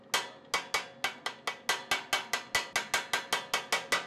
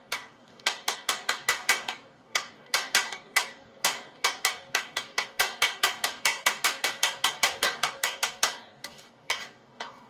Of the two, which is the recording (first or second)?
first